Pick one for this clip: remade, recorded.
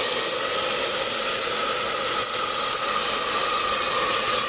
recorded